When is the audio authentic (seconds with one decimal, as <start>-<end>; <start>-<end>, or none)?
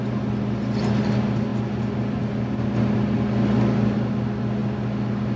0.0-5.4